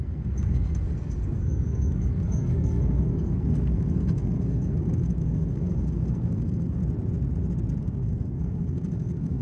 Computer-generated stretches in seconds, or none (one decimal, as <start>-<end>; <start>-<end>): 0.0-6.8; 7.8-9.4